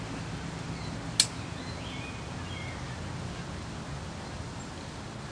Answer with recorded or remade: recorded